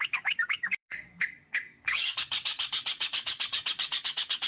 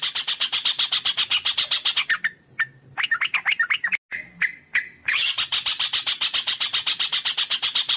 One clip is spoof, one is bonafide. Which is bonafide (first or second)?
second